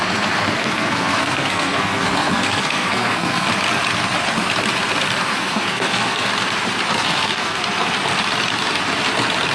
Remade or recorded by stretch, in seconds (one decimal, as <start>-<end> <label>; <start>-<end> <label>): 0.0-0.6 recorded; 0.6-3.5 remade; 3.5-5.3 recorded; 5.3-6.3 remade; 6.3-6.9 recorded; 6.9-7.6 remade; 7.6-9.5 recorded